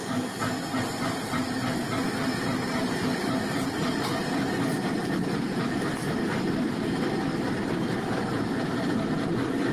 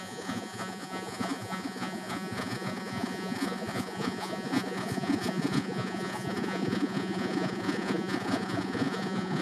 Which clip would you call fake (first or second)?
second